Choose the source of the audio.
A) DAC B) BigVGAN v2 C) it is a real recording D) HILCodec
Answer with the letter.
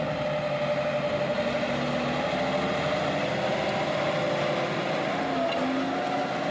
C